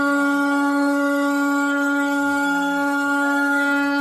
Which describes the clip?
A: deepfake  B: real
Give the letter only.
A